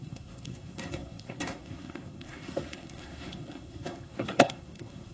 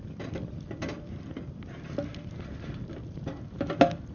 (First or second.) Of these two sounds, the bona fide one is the second